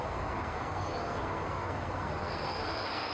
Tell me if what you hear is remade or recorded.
remade